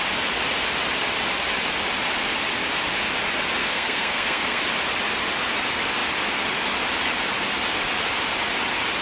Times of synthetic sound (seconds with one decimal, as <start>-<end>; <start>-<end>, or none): 3.6-4.6